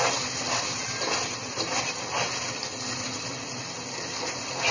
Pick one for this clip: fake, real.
real